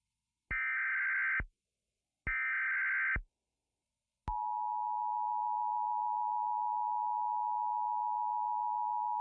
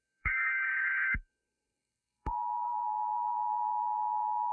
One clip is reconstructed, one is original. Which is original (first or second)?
first